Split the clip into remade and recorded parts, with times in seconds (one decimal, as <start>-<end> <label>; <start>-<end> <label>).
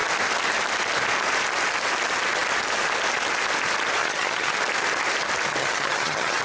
0.0-4.0 recorded; 4.0-4.6 remade; 4.6-5.6 recorded; 5.6-6.4 remade